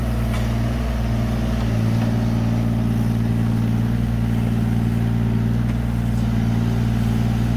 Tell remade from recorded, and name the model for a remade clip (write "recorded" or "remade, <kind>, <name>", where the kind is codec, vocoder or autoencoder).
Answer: recorded